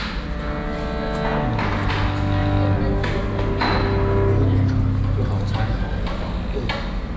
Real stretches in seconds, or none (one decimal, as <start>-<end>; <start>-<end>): 0.0-7.2